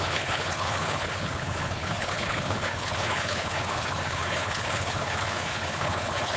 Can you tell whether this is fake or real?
fake